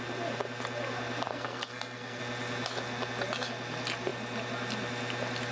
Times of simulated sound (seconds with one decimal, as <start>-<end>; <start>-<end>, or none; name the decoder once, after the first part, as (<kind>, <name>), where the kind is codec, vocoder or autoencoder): 1.3-2.2 (codec, SNAC)